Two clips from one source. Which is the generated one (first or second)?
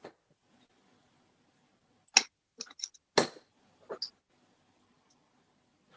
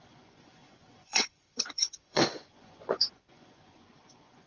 second